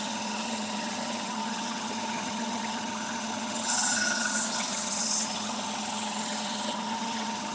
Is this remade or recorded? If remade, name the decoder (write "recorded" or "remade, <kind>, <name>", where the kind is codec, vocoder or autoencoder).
remade, vocoder, HiFi-GAN